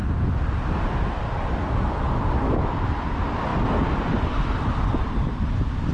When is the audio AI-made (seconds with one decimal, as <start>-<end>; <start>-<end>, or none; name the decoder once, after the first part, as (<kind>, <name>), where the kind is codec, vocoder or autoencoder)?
0.0-1.9 (vocoder, BigVGAN v2); 3.5-4.9